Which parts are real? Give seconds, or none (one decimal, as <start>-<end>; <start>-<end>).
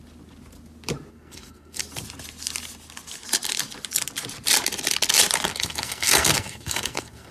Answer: 0.0-1.1; 1.8-5.5